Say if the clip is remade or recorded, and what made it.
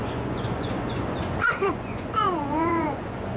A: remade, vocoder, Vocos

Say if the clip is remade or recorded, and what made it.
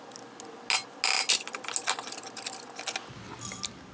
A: recorded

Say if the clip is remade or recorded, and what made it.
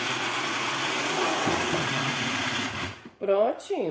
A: remade, vocoder, Vocos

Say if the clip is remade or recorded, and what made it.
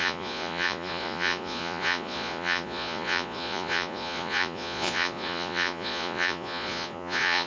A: remade, vocoder, Vocos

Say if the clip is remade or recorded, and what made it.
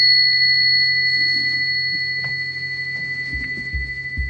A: recorded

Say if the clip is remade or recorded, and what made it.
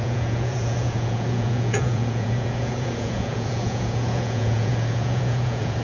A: remade, vocoder, Vocos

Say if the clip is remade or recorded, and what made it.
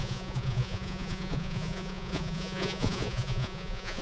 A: remade, vocoder, Vocos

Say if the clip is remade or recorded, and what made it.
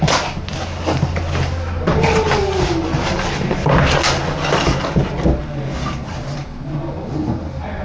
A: recorded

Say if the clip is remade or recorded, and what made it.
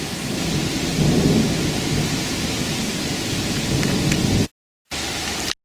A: recorded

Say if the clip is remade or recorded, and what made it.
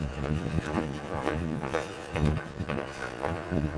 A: remade, vocoder, Vocos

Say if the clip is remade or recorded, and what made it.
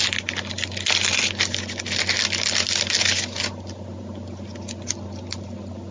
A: recorded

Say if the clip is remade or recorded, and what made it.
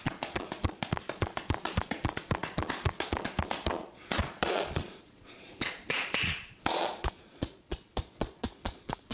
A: remade, vocoder, Vocos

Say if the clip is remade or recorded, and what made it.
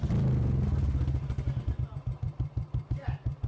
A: recorded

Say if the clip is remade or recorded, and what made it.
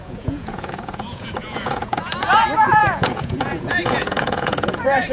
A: remade, vocoder, Vocos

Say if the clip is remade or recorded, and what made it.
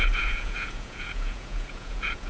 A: remade, vocoder, Vocos